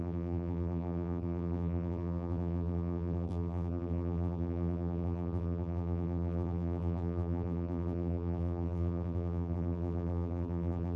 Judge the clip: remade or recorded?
remade